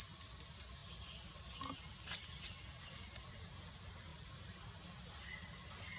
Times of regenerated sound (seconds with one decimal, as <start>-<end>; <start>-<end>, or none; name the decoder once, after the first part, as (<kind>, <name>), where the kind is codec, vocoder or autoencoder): 4.1-6.0 (vocoder, BigVGAN v2)